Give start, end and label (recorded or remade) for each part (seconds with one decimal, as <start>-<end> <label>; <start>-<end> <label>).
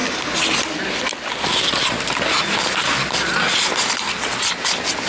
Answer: 0.0-5.1 recorded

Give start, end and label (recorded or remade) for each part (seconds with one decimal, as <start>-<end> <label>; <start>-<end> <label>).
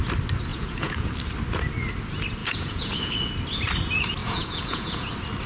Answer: 0.0-0.5 recorded; 0.5-1.1 remade; 1.1-2.4 recorded; 2.4-3.3 remade; 3.3-4.2 recorded; 4.2-5.1 remade; 5.1-5.5 recorded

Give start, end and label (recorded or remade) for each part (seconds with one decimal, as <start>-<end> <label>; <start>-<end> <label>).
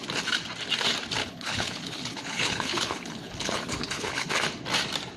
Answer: 0.0-1.2 recorded; 1.2-4.3 remade; 4.3-5.2 recorded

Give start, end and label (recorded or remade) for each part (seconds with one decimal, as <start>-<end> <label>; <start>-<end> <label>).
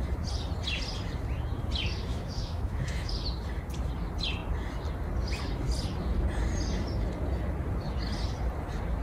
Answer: 0.0-2.1 recorded; 2.1-3.1 remade; 3.1-9.0 recorded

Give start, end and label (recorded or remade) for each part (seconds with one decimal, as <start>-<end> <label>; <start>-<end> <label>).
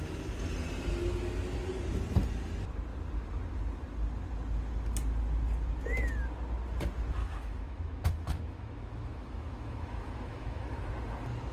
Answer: 0.0-7.2 recorded; 7.2-10.9 remade; 10.9-11.5 recorded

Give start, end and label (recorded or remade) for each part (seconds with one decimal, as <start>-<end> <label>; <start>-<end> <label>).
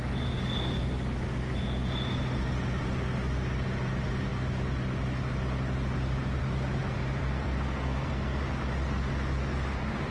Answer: 0.0-7.2 recorded; 7.2-8.4 remade; 8.4-10.1 recorded